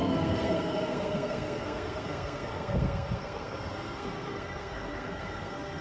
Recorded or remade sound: remade